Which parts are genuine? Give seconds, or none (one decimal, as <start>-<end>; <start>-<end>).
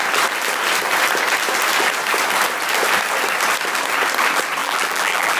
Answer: 0.0-4.6